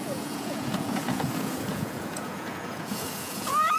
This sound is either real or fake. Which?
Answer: fake